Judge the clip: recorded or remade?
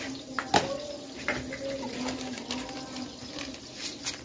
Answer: recorded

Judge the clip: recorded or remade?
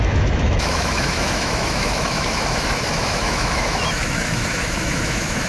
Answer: remade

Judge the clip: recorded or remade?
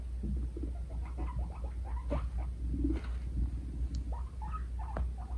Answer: recorded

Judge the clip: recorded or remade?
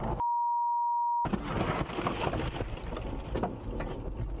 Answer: recorded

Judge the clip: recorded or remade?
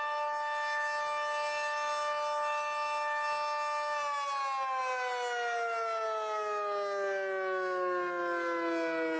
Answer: recorded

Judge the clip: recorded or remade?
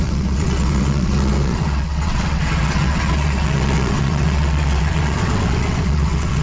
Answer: remade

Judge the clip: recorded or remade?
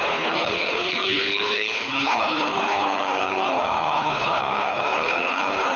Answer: remade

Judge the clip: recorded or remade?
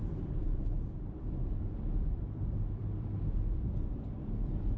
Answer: remade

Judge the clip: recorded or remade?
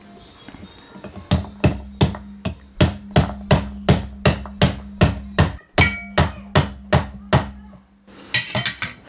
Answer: recorded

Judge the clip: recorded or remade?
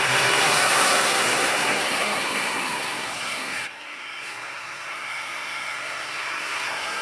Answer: remade